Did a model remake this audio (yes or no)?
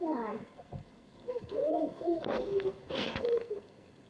yes